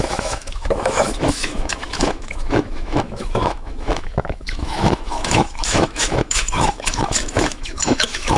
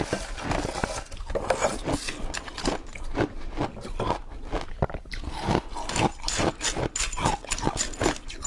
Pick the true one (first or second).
second